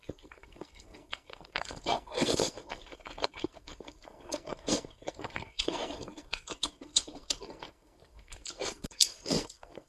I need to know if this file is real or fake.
fake